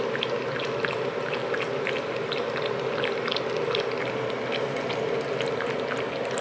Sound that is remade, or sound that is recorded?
recorded